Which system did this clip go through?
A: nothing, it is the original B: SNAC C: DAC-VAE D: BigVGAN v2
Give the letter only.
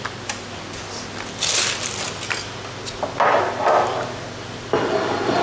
A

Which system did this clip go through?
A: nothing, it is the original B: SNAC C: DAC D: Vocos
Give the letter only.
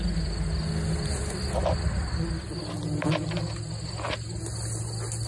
A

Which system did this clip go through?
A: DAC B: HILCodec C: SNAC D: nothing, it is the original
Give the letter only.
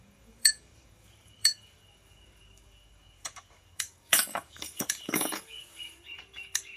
A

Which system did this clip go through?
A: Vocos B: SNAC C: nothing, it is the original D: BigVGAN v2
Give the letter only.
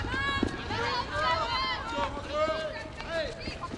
C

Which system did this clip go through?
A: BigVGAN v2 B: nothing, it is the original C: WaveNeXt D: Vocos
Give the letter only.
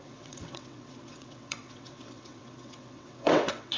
C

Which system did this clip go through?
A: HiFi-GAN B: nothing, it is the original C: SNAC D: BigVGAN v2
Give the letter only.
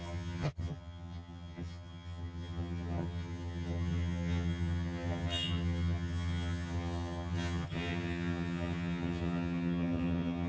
A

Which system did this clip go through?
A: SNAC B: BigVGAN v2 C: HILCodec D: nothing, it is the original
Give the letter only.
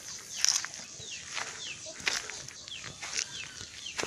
D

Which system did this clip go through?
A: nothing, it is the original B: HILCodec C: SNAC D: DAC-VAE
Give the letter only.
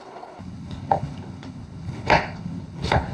B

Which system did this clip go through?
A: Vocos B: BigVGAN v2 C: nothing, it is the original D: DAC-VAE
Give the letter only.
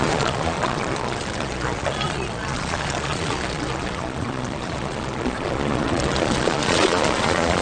A